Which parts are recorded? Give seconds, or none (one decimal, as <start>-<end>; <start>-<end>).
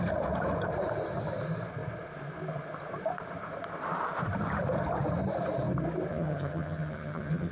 0.0-6.1